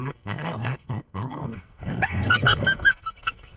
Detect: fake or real fake